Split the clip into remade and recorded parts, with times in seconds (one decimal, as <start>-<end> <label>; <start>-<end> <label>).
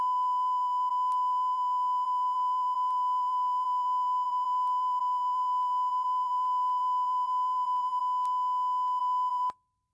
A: 0.0-8.0 remade; 8.0-9.0 recorded; 9.0-9.9 remade